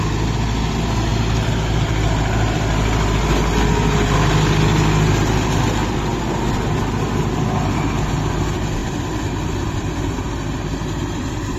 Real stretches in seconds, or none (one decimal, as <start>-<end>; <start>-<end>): 0.0-1.1; 3.7-8.8